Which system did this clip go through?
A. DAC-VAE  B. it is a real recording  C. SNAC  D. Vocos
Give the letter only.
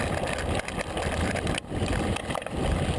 B